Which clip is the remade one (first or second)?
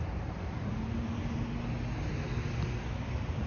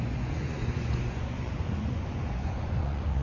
second